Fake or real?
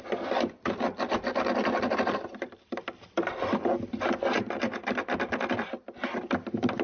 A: real